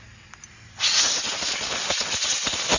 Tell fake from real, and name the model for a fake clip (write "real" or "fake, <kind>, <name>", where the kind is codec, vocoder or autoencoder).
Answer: real